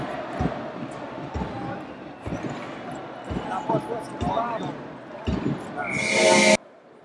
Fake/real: real